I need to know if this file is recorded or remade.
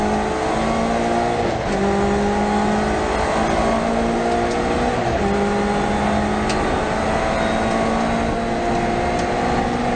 recorded